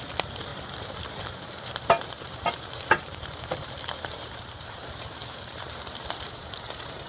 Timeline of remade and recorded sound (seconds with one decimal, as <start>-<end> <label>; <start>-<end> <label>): 0.0-7.1 remade